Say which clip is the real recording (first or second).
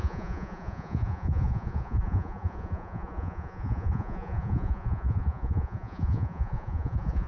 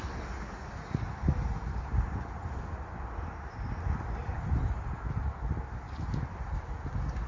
second